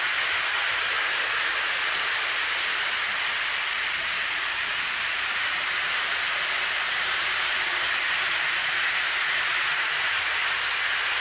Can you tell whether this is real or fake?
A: real